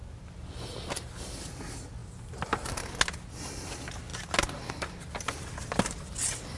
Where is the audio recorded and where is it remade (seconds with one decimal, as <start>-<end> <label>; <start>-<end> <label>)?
0.0-2.0 recorded; 2.0-2.7 remade; 2.7-6.6 recorded